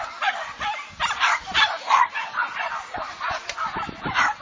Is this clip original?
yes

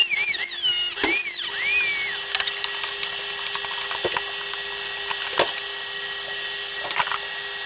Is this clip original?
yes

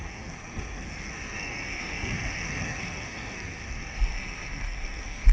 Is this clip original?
no